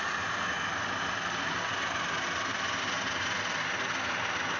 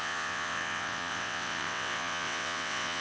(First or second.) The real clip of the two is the first